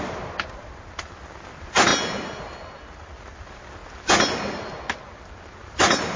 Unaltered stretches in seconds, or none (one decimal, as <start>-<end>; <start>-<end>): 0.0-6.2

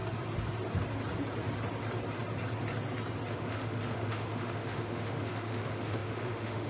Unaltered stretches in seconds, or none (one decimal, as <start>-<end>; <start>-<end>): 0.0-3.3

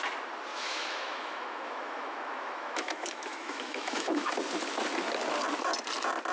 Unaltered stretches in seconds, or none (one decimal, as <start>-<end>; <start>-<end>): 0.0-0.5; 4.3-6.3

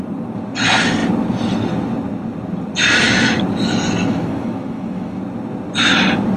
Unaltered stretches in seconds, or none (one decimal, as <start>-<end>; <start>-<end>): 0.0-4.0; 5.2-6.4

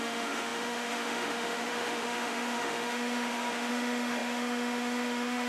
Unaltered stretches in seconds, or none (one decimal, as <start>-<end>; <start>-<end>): none